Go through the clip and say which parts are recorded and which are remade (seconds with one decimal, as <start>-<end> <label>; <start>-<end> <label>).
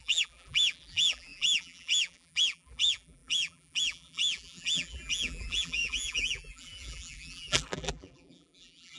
0.0-9.0 remade